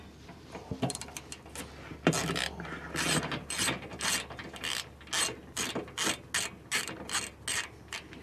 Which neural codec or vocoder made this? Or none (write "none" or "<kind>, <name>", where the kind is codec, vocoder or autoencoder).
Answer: none